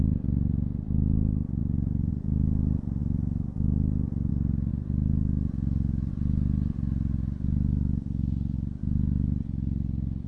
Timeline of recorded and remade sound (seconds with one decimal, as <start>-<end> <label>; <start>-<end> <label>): 0.0-1.6 recorded; 1.6-2.1 remade; 2.1-3.0 recorded; 3.0-4.3 remade; 4.3-10.3 recorded

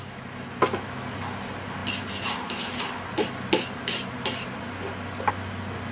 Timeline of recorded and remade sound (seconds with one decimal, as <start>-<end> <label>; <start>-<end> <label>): 0.0-5.9 recorded

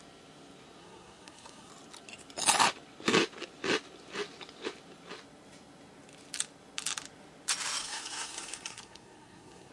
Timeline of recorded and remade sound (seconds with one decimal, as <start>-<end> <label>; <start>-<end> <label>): 0.0-0.8 recorded; 0.8-1.7 remade; 1.7-7.8 recorded; 7.8-9.7 remade

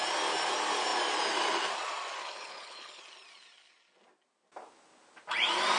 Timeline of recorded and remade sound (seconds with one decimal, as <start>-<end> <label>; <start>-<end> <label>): 0.0-2.2 recorded; 2.2-3.0 remade; 3.0-5.8 recorded

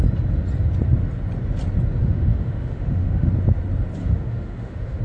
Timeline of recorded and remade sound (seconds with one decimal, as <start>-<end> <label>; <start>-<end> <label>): 0.0-2.0 recorded; 2.0-3.3 remade; 3.3-4.0 recorded; 4.0-5.0 remade

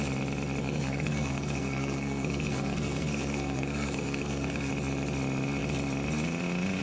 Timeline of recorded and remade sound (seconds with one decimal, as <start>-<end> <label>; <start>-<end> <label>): 0.0-0.6 recorded; 0.6-4.7 remade; 4.7-6.8 recorded

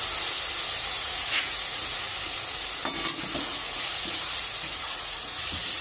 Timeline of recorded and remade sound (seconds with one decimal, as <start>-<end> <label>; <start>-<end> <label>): 0.0-0.8 recorded; 0.8-2.1 remade; 2.1-3.4 recorded; 3.4-5.8 remade